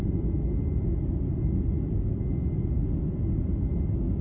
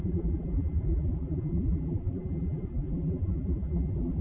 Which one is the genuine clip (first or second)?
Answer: first